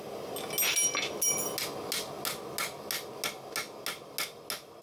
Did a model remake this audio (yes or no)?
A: no